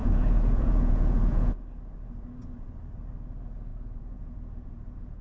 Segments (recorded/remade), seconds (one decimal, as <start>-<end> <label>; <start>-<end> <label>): 0.0-1.6 remade; 1.6-3.7 recorded; 3.7-5.2 remade